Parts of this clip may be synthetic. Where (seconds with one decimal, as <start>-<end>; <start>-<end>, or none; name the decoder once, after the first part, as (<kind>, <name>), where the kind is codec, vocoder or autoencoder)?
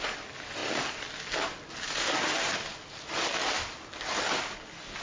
none